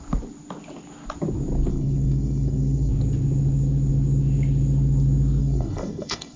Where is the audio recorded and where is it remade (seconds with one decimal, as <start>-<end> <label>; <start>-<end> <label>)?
0.0-1.7 recorded; 1.7-2.9 remade; 2.9-5.4 recorded; 5.4-6.4 remade